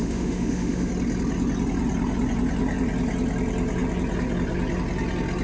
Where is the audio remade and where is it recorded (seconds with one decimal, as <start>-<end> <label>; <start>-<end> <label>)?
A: 0.0-0.9 remade; 0.9-5.4 recorded